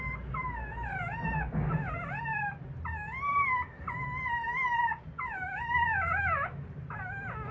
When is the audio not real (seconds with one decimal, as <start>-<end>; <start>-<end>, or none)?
none